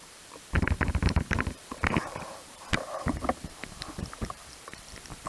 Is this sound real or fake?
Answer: fake